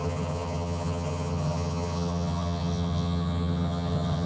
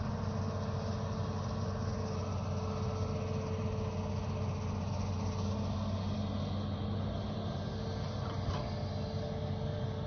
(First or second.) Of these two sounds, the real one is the second